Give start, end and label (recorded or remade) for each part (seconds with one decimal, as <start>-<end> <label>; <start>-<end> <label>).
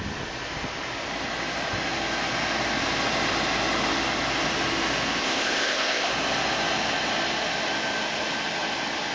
0.0-5.2 recorded; 5.2-6.1 remade; 6.1-9.1 recorded